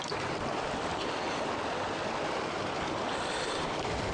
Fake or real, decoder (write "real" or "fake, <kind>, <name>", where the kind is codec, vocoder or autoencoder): real